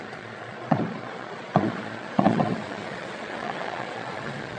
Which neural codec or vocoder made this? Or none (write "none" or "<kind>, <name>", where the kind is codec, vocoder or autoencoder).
vocoder, Vocos